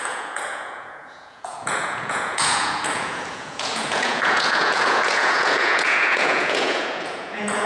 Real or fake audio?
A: fake